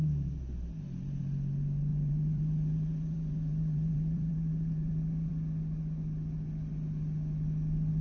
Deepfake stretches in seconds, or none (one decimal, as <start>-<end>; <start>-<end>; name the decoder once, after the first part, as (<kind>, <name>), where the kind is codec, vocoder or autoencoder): 1.9-5.3 (vocoder, BigVGAN v2)